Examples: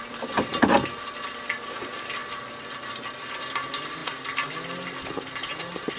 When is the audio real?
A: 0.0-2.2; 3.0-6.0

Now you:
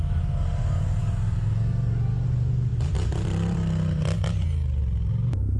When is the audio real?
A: 0.0-5.6

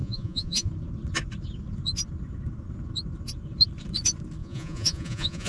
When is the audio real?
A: 0.7-4.4

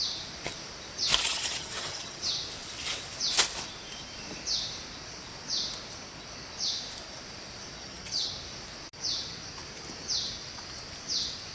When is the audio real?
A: 0.0-1.2; 2.2-7.8; 8.3-11.5